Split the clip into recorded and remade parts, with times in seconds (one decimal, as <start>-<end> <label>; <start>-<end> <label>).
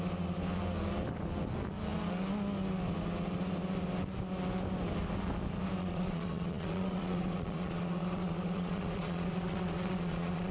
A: 0.0-5.8 recorded; 5.8-10.5 remade